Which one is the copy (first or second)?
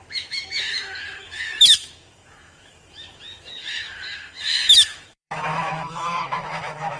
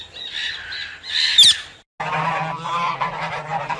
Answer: first